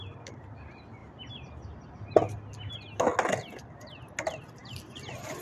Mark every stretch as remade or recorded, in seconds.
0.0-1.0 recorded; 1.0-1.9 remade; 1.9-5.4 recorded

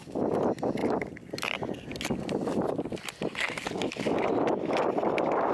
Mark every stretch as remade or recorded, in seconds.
0.0-0.8 remade; 0.8-2.7 recorded; 2.7-5.5 remade

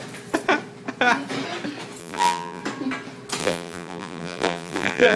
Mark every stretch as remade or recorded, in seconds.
0.0-2.0 recorded; 2.0-2.6 remade; 2.6-3.4 recorded; 3.4-5.2 remade